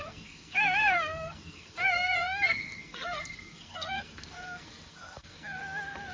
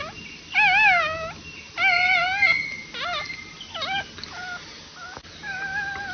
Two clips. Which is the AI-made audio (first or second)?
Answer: first